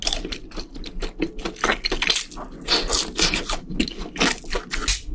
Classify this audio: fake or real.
real